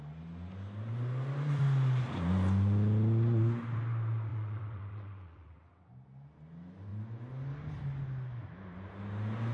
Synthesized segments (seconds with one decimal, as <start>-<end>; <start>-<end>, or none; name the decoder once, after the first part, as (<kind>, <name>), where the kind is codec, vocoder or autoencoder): 4.3-5.9 (vocoder, WaveNeXt)